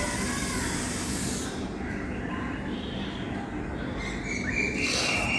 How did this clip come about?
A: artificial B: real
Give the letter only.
B